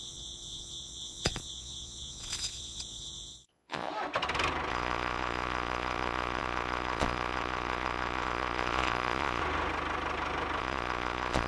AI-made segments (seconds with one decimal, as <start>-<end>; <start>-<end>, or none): 0.0-3.9; 4.7-9.4; 10.6-11.5